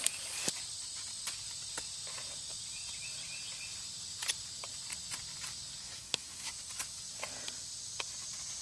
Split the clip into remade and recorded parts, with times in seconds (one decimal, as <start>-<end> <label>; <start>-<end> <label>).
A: 0.0-5.8 recorded; 5.8-6.5 remade; 6.5-8.6 recorded